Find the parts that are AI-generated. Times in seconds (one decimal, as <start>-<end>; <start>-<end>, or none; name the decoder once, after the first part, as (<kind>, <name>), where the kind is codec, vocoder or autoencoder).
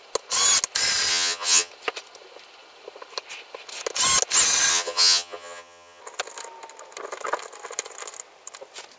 1.1-1.7 (vocoder, HiFi-GAN); 4.7-6.0